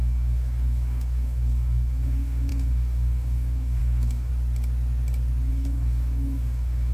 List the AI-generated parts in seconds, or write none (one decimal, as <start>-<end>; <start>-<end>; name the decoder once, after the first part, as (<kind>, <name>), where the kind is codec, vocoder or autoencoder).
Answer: 0.0-4.3 (codec, DAC); 5.5-6.9